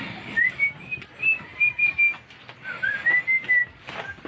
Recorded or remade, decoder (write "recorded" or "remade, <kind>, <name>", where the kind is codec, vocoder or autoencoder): recorded